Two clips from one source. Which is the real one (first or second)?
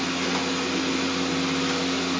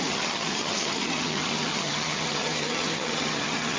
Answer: first